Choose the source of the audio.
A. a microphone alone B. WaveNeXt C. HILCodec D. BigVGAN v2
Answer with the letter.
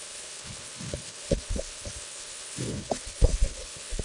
C